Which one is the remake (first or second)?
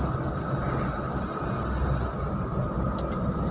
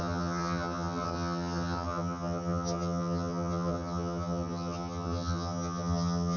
second